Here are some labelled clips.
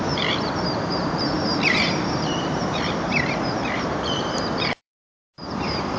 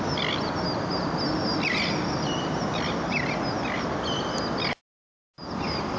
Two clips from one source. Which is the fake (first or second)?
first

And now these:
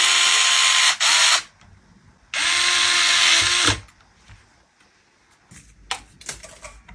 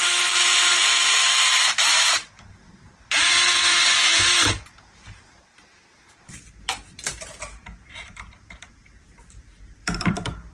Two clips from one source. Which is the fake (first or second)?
second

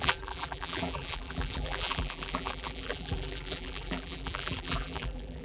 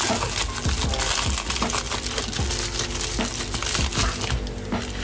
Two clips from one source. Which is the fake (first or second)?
first